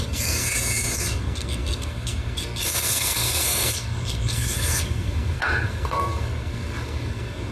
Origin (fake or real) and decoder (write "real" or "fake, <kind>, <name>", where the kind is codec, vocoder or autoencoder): fake, codec, SNAC